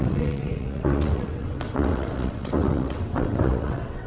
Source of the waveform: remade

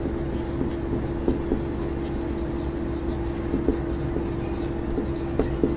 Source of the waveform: recorded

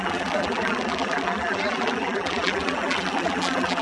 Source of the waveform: remade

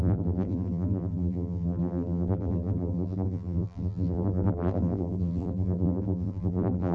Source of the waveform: remade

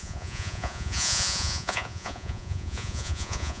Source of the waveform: remade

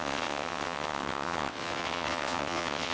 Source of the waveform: remade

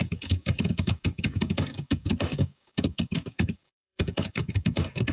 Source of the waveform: remade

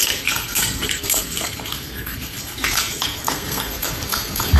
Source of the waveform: remade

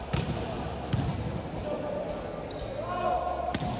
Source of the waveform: recorded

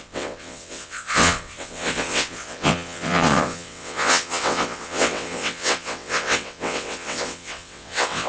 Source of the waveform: remade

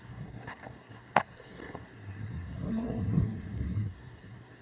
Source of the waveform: remade